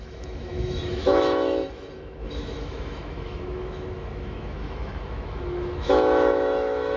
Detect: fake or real fake